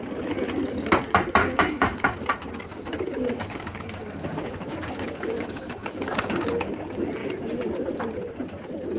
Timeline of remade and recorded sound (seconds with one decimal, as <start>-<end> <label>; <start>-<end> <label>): 0.0-1.4 recorded; 1.4-2.2 remade; 2.2-3.4 recorded; 3.4-6.7 remade; 6.7-9.0 recorded

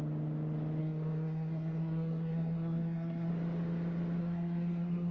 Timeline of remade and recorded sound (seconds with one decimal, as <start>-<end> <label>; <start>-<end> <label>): 0.0-0.8 recorded; 0.8-3.3 remade; 3.3-4.2 recorded; 4.2-5.1 remade